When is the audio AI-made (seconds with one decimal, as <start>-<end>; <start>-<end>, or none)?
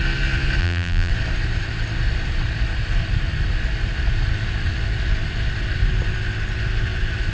0.6-1.1